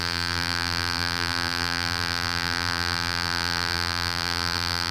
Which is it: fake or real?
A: fake